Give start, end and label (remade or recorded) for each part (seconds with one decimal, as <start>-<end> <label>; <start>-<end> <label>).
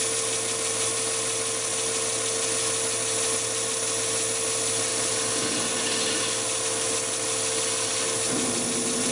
0.0-9.1 recorded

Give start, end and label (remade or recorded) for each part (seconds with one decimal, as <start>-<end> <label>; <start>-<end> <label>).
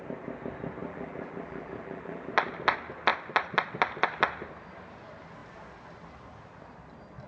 0.0-0.8 recorded; 0.8-2.3 remade; 2.3-7.3 recorded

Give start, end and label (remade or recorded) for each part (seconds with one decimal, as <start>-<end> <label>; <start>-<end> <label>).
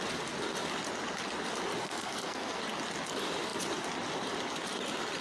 0.0-1.8 recorded; 1.8-2.6 remade; 2.6-5.2 recorded